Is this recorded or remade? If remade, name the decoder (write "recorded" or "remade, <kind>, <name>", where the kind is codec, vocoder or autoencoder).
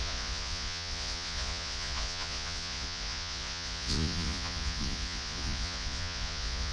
remade, vocoder, Vocos